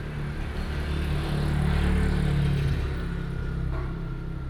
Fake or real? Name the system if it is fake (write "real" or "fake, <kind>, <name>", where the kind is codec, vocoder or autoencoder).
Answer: real